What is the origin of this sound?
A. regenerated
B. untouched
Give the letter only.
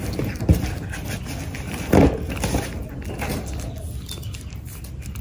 B